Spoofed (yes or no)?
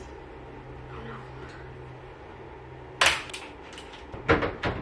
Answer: no